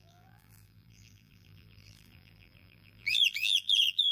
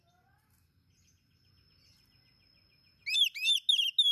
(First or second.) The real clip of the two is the second